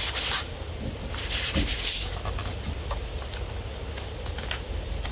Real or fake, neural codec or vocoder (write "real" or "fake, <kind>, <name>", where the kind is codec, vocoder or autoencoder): real